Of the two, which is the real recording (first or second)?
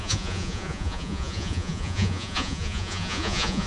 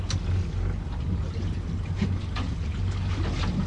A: second